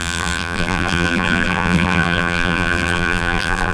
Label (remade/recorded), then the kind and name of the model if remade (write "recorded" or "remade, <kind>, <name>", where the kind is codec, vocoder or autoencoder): remade, vocoder, BigVGAN v2